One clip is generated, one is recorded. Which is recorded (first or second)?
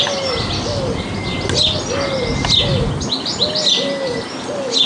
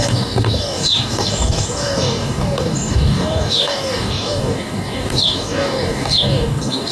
first